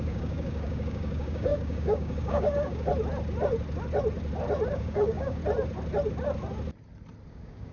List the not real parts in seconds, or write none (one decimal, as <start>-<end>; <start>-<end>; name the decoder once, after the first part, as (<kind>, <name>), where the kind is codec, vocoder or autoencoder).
0.0-2.9 (codec, DAC); 4.7-5.4; 7.3-7.7